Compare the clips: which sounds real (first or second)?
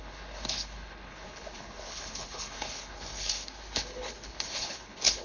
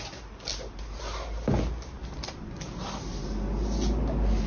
second